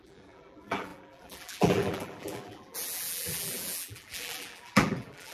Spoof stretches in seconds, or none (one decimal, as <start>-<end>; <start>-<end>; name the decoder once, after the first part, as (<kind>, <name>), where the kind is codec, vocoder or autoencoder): 0.0-5.3 (vocoder, BigVGAN v2)